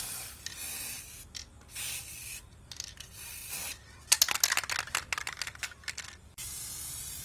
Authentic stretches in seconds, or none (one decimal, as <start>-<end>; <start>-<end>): 0.0-7.2